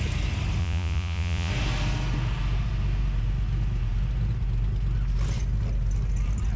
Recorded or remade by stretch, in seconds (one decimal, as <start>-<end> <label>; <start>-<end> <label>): 0.0-0.6 recorded; 0.6-1.5 remade; 1.5-6.6 recorded

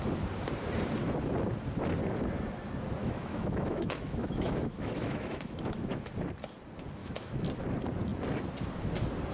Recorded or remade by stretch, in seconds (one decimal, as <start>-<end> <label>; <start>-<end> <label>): 0.0-3.0 recorded; 3.0-6.0 remade; 6.0-7.0 recorded; 7.0-7.5 remade; 7.5-9.3 recorded

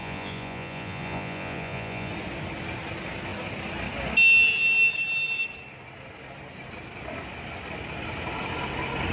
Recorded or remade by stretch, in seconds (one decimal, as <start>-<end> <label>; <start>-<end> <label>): 0.0-2.1 remade; 2.1-9.1 recorded

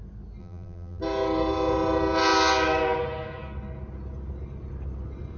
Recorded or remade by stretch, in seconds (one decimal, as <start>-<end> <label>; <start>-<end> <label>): 0.0-0.4 recorded; 0.4-1.0 remade; 1.0-5.4 recorded

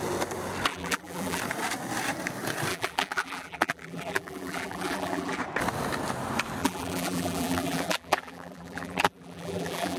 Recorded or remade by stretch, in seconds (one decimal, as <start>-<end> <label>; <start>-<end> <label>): 0.0-0.7 recorded; 0.7-1.4 remade; 1.4-2.7 recorded; 2.7-5.4 remade; 5.4-6.6 recorded; 6.6-10.0 remade

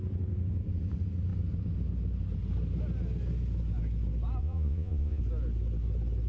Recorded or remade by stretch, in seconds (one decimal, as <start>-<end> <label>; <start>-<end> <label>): 0.0-4.4 recorded; 4.4-5.2 remade; 5.2-6.3 recorded

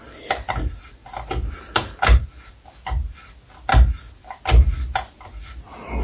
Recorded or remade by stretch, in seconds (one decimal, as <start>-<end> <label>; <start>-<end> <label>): 0.0-6.0 recorded